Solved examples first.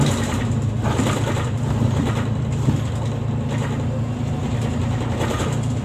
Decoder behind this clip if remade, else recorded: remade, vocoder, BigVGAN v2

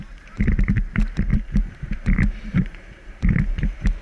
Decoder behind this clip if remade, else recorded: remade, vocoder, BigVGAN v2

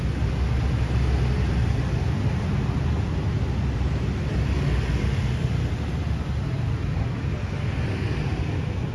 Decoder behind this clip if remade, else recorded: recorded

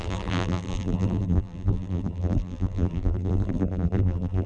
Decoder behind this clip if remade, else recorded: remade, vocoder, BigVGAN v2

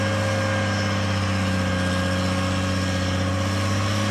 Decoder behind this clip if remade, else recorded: recorded